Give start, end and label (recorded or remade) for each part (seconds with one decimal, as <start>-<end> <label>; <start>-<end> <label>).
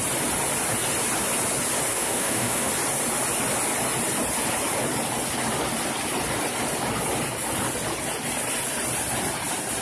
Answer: 0.0-1.9 recorded; 1.9-2.7 remade; 2.7-9.8 recorded